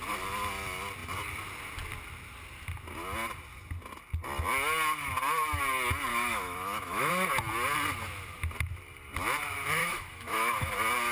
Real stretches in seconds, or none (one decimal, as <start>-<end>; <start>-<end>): 0.0-6.1; 7.1-9.8; 10.7-11.1